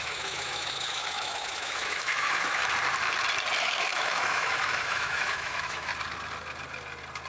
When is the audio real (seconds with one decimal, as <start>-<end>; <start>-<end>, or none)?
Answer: 2.6-3.6; 5.9-7.3